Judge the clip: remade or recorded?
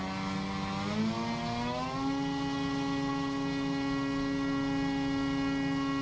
recorded